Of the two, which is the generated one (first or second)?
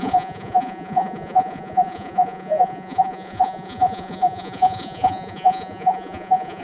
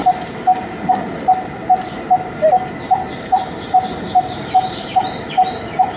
first